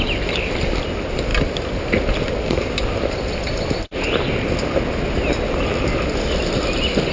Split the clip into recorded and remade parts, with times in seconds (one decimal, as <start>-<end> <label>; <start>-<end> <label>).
0.0-7.1 recorded